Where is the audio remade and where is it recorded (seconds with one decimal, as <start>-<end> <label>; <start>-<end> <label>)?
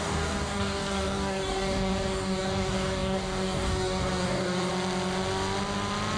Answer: 0.0-4.7 remade; 4.7-6.2 recorded